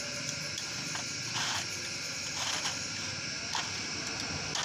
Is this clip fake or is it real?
real